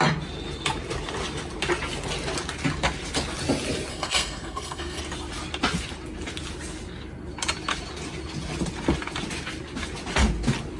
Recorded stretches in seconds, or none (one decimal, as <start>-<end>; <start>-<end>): 0.0-3.9; 5.0-10.8